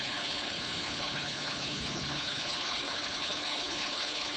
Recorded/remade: remade